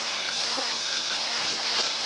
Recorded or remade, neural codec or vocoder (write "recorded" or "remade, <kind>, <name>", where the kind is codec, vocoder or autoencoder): remade, codec, SNAC